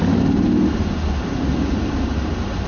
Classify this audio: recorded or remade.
recorded